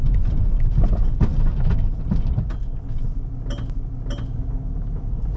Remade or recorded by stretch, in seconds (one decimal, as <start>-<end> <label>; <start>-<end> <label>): 0.0-5.4 recorded